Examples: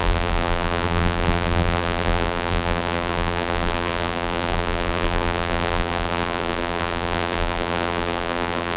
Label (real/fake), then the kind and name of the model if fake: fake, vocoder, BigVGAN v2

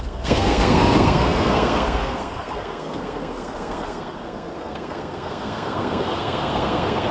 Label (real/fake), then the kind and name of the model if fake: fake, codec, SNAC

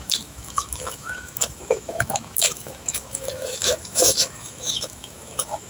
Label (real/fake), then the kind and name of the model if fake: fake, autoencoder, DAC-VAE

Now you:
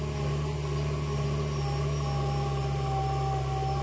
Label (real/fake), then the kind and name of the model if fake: real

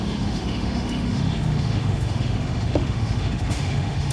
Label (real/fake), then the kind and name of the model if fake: fake, autoencoder, DAC-VAE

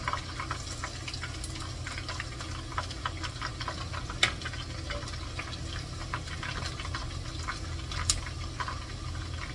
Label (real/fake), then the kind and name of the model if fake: real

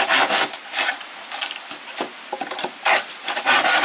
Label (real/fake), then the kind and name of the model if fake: real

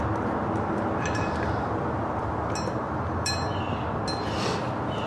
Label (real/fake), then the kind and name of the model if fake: real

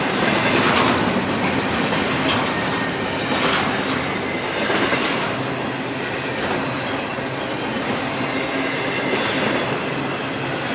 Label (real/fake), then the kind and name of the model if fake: real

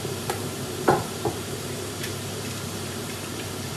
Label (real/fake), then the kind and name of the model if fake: fake, vocoder, BigVGAN v2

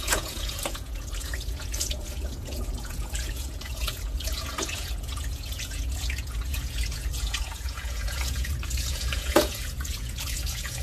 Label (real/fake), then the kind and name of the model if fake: fake, vocoder, Vocos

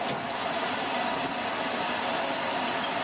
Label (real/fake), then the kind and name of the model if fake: real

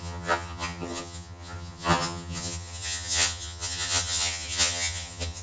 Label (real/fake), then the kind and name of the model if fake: fake, vocoder, HiFi-GAN